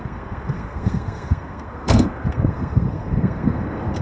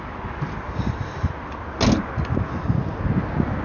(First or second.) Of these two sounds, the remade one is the first